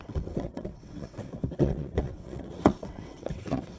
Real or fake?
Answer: fake